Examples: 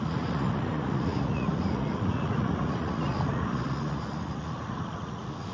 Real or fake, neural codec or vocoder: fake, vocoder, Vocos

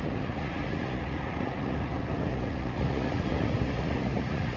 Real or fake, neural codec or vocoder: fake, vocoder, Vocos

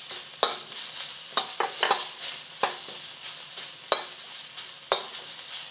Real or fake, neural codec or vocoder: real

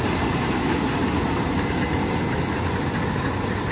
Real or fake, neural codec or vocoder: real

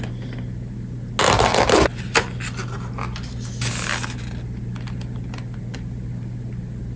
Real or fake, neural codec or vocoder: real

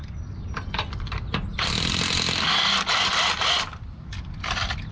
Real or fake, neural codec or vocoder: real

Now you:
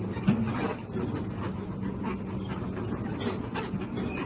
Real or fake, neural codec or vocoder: real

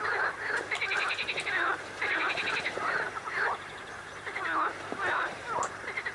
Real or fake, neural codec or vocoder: real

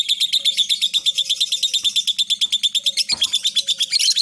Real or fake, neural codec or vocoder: real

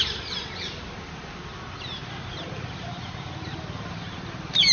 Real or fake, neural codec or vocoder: real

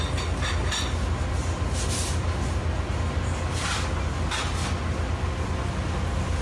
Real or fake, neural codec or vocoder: real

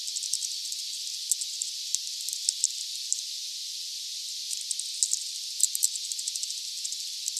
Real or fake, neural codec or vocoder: real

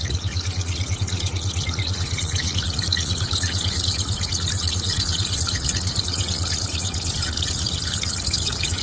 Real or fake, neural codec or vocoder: fake, vocoder, Vocos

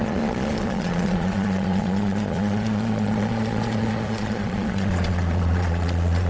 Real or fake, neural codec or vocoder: fake, vocoder, Vocos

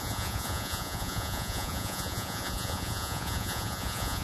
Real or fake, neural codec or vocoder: fake, vocoder, Vocos